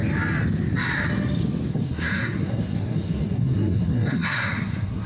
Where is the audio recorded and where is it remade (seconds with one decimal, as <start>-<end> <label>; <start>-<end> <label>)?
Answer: 0.0-1.7 recorded; 1.7-5.1 remade